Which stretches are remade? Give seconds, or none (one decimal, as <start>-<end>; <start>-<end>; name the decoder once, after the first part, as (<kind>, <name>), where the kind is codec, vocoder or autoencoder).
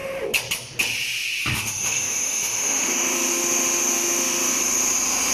1.4-4.6 (autoencoder, DAC-VAE)